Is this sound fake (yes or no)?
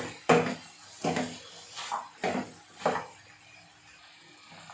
no